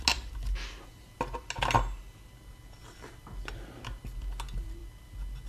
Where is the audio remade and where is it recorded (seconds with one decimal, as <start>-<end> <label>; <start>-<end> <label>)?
0.0-5.5 recorded